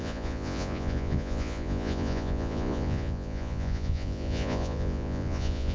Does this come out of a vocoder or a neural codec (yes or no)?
yes